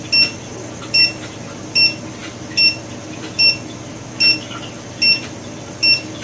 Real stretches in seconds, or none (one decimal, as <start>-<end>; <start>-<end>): 0.0-6.2